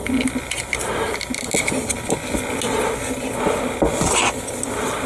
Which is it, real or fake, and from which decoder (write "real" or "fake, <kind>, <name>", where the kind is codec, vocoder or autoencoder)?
real